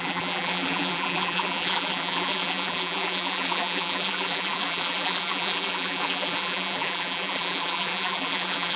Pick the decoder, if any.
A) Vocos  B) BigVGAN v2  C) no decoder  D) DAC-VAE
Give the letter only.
B